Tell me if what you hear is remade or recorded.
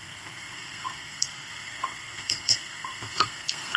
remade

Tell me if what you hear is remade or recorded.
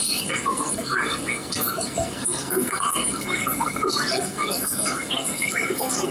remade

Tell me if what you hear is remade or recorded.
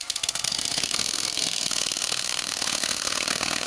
remade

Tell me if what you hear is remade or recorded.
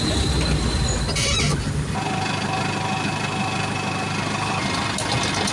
recorded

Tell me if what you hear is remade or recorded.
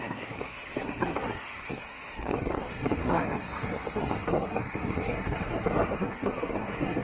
remade